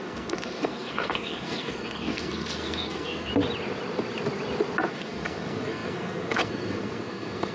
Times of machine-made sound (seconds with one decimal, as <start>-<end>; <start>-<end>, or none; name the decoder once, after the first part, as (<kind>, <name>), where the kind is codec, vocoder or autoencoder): 0.0-3.3 (codec, SNAC); 4.9-7.5